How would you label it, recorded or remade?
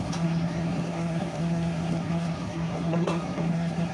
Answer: remade